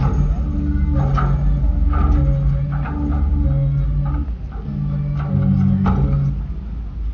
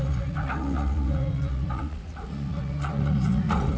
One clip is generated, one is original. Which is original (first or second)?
first